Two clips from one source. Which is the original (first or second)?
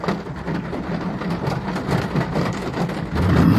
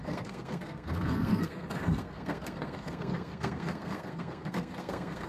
first